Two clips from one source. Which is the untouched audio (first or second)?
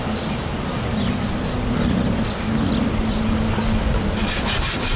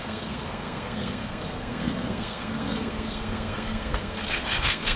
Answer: first